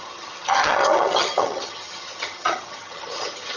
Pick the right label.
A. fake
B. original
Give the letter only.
A